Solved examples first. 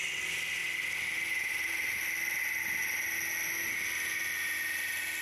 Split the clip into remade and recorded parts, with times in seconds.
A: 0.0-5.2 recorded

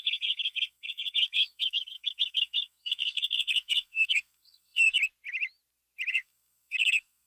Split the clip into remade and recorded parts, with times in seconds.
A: 0.0-5.0 remade; 5.0-6.1 recorded; 6.1-7.3 remade